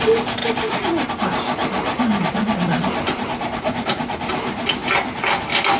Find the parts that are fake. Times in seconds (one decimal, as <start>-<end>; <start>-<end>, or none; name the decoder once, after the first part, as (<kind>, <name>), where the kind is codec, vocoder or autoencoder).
0.4-1.1 (vocoder, BigVGAN v2); 1.6-5.1